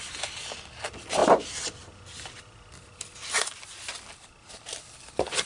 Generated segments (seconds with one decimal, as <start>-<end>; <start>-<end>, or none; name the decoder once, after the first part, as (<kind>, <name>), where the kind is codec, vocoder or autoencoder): none